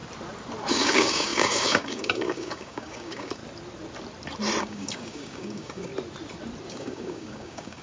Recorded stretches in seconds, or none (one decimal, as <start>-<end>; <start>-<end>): 0.0-0.7; 3.4-4.6; 5.9-6.7